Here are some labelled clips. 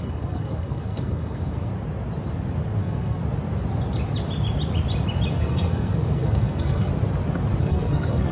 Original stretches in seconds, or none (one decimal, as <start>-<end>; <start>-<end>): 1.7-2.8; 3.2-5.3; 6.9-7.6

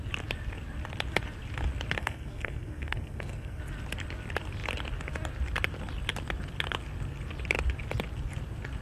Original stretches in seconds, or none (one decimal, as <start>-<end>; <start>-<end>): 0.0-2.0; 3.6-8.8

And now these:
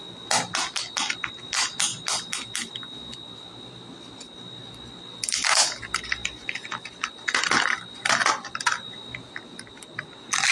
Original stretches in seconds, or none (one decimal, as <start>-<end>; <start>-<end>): 0.0-10.5

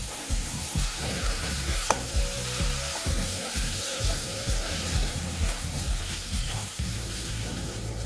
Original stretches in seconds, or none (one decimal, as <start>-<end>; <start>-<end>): 2.2-3.1

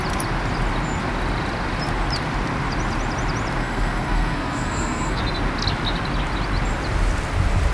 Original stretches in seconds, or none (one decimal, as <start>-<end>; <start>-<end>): 0.0-3.6; 5.2-7.7

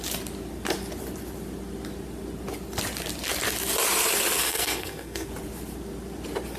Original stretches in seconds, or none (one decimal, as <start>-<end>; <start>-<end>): 0.0-4.4; 5.3-6.6

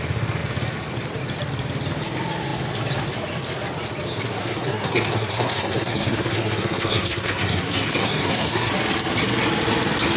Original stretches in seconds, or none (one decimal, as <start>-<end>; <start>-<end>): 0.0-4.4; 8.7-10.2

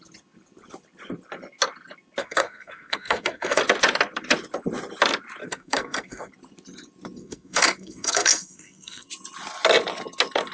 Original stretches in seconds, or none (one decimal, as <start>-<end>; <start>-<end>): 0.0-2.2; 3.6-5.4; 6.3-7.2; 9.1-10.5